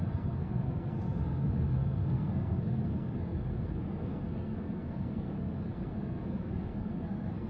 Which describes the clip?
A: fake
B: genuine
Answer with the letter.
A